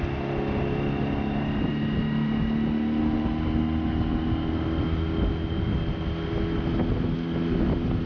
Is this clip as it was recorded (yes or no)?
yes